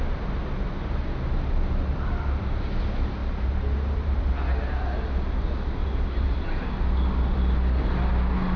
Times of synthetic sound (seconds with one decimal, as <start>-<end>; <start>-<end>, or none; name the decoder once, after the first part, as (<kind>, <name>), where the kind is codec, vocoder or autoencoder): 3.2-4.2 (vocoder, BigVGAN v2); 5.8-6.7